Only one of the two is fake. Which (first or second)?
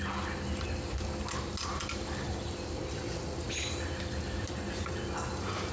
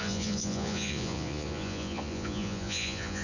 second